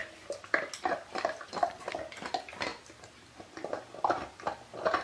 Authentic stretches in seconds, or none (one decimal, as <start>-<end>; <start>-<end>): 0.0-5.0